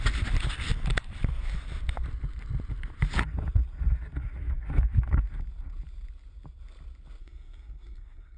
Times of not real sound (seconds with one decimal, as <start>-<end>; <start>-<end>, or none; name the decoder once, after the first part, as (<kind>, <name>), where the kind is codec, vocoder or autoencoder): 7.2-8.4 (codec, SNAC)

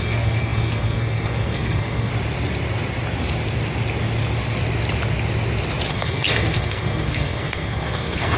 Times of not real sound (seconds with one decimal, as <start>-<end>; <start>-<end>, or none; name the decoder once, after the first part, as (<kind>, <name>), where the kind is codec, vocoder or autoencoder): 0.0-2.1 (codec, SNAC); 5.9-8.4